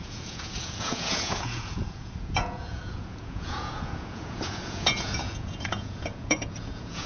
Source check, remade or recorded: remade